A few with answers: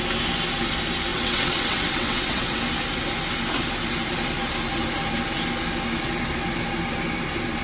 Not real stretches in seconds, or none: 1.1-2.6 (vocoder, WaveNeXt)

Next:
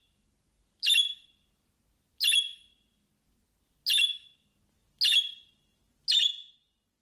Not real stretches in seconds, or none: none

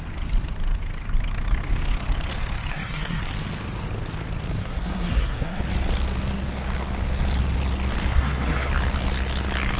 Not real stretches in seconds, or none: 2.7-3.2 (codec, SNAC); 4.6-5.6; 8.1-8.7

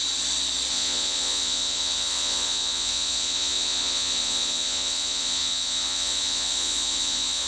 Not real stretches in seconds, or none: 0.7-7.5 (vocoder, Vocos)